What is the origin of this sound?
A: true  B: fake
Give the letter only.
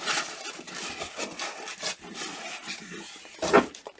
A